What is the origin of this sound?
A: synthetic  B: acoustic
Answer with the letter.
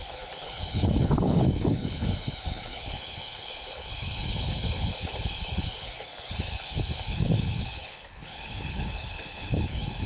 A